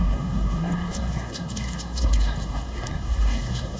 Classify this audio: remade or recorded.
remade